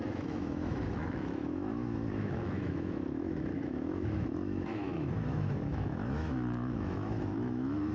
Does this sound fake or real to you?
fake